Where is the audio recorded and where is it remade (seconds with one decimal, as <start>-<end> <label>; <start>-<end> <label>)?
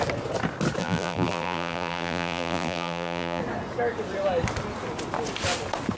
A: 0.0-0.8 recorded; 0.8-3.4 remade; 3.4-6.0 recorded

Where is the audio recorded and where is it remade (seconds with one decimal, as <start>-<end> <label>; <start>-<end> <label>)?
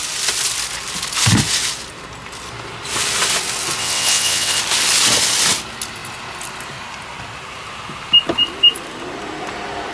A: 0.0-3.8 recorded; 3.8-4.6 remade; 4.6-9.9 recorded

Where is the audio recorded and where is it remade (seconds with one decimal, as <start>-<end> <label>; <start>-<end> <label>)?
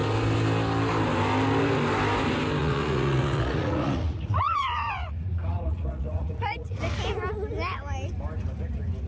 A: 0.0-2.6 recorded; 2.6-6.8 remade; 6.8-9.1 recorded